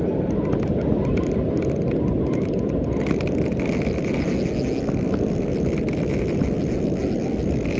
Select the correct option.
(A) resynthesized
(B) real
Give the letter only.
B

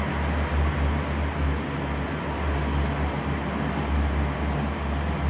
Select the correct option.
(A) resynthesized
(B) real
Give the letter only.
B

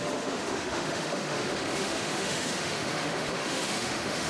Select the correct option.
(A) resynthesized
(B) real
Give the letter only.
A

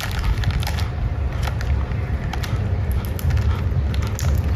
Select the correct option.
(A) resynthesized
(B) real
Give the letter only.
B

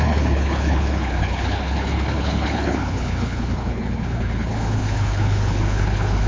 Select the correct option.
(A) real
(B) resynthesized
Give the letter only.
B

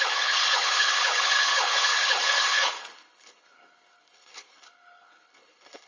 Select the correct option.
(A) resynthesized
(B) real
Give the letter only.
A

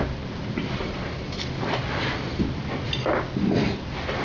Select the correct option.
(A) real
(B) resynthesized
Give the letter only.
B